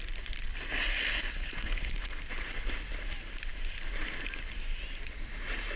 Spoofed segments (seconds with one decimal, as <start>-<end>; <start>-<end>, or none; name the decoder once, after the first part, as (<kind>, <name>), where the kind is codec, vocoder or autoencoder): 1.4-2.2 (codec, HILCodec)